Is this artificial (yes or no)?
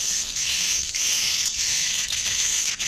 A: yes